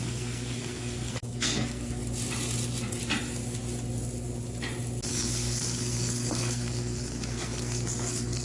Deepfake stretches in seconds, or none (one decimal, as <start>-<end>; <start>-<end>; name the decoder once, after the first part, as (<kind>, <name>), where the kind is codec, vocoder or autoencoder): 0.0-2.0 (codec, SNAC); 5.1-8.4